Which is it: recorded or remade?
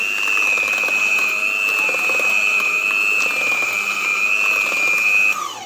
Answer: recorded